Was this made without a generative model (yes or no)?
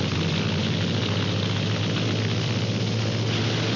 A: yes